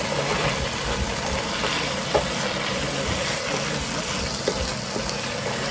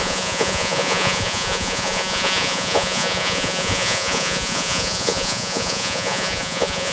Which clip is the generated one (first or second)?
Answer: second